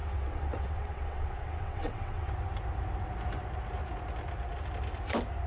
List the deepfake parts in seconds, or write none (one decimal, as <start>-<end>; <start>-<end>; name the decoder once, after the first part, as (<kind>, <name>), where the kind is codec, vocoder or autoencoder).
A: 0.0-2.3 (vocoder, WaveNeXt)